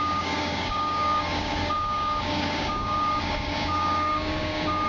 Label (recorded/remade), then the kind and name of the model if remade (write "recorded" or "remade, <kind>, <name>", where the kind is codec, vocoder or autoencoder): remade, codec, DAC